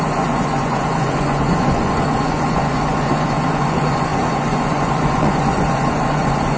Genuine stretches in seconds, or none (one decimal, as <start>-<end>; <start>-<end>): none